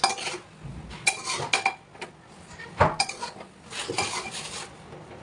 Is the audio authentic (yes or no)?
yes